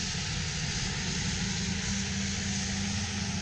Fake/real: real